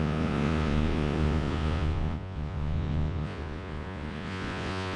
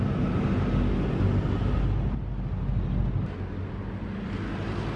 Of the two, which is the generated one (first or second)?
first